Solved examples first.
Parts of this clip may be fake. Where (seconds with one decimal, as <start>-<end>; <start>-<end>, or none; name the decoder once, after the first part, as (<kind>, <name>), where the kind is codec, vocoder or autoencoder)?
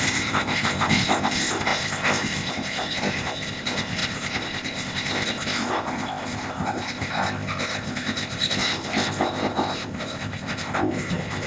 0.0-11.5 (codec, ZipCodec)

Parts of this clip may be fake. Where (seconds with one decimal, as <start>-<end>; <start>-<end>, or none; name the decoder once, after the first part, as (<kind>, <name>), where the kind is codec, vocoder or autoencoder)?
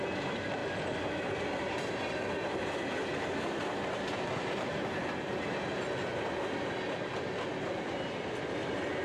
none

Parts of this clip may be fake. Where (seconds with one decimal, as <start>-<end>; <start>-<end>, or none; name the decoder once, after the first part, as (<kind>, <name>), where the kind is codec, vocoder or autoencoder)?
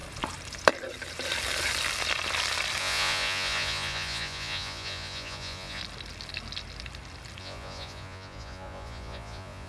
2.8-5.8 (vocoder, Vocos); 7.4-9.7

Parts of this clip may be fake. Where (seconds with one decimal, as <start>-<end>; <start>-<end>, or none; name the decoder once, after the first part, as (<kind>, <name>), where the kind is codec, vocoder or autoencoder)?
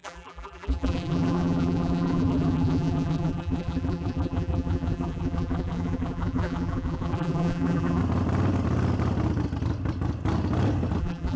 0.0-8.0 (vocoder, BigVGAN v2); 11.0-11.4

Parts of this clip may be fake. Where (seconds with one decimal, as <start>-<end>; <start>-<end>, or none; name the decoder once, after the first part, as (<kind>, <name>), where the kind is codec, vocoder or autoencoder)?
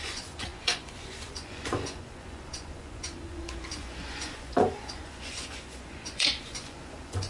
0.0-7.3 (vocoder, Vocos)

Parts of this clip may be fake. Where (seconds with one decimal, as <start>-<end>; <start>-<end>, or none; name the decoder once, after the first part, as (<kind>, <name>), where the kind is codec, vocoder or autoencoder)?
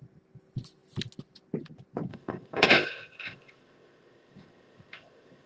2.1-5.5 (codec, ZipCodec)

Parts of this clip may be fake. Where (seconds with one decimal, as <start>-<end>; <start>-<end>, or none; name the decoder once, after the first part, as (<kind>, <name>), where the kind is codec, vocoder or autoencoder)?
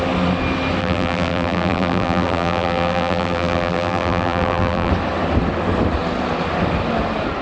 0.8-4.9 (vocoder, BigVGAN v2)